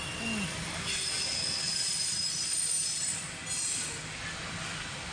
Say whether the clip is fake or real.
real